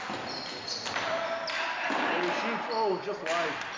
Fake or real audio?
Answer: real